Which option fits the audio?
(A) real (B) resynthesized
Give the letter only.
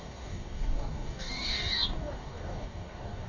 B